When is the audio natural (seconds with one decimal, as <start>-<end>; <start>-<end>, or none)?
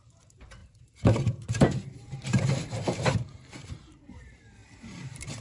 none